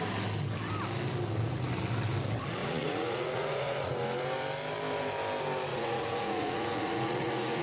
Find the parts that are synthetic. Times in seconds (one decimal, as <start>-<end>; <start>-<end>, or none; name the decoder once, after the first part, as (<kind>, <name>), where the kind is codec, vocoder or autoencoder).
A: 2.6-3.9 (vocoder, Vocos); 5.7-7.6